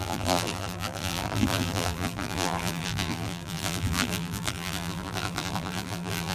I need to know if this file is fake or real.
fake